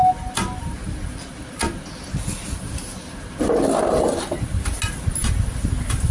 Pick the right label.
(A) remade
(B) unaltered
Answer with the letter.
B